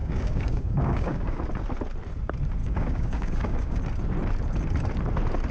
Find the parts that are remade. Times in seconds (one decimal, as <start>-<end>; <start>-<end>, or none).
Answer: 0.0-1.4; 2.6-3.8